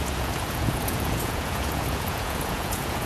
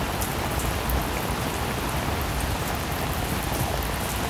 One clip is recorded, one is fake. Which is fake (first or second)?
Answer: first